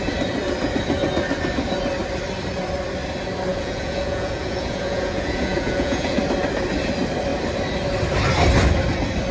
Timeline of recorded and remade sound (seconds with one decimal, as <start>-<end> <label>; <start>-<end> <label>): 0.0-3.5 recorded; 3.5-6.2 remade; 6.2-9.3 recorded

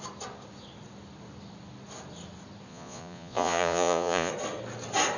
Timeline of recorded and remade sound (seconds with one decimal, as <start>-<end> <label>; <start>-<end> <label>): 0.0-2.7 recorded; 2.7-4.3 remade; 4.3-5.2 recorded

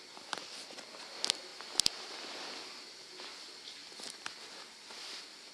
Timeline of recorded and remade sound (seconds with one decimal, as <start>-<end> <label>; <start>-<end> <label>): 0.0-5.5 recorded

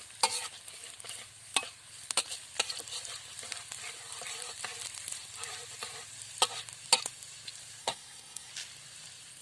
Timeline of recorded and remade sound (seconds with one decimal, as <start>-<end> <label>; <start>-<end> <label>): 0.0-7.8 recorded; 7.8-8.5 remade; 8.5-9.4 recorded

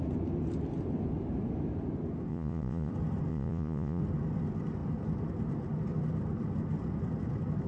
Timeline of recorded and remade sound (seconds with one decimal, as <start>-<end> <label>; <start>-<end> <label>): 0.0-2.3 recorded; 2.3-2.9 remade; 2.9-3.3 recorded; 3.3-4.0 remade; 4.0-7.7 recorded

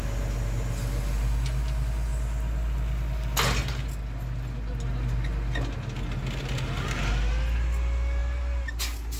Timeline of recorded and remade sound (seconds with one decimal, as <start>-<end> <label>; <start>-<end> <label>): 0.0-9.2 recorded

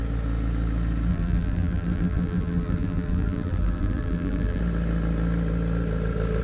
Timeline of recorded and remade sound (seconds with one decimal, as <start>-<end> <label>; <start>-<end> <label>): 0.0-1.1 recorded; 1.1-4.6 remade; 4.6-6.4 recorded

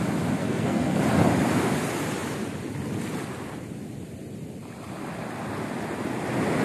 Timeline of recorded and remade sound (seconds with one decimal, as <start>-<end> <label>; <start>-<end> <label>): 0.0-0.4 recorded; 0.4-1.0 remade; 1.0-6.6 recorded